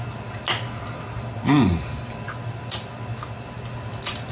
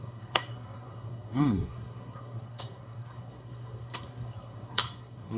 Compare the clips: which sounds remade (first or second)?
second